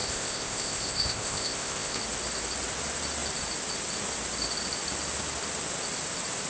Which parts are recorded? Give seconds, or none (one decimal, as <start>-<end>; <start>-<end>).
2.0-6.5